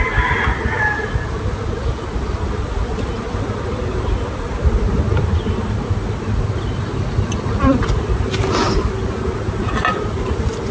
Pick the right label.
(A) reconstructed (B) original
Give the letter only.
B